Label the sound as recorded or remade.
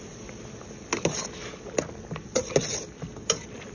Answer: recorded